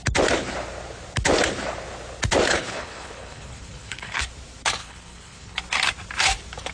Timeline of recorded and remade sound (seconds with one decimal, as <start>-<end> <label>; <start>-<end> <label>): 0.0-2.5 recorded; 2.5-4.3 remade; 4.3-4.8 recorded; 4.8-5.6 remade; 5.6-6.7 recorded